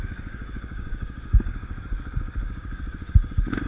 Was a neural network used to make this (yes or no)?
yes